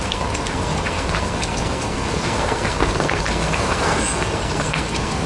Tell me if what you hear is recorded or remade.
remade